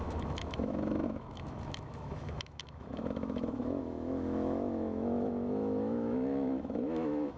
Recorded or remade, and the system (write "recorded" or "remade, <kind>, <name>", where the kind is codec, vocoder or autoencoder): remade, autoencoder, DAC-VAE